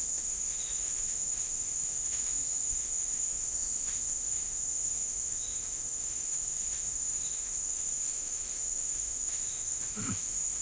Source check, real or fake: fake